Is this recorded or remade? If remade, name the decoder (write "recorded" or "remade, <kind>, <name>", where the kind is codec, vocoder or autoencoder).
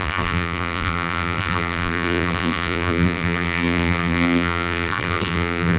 remade, vocoder, BigVGAN v2